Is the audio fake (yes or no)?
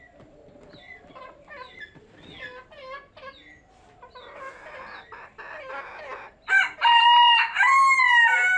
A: no